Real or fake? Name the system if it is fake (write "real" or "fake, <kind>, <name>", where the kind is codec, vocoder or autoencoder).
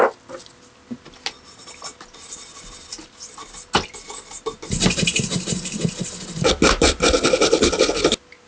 real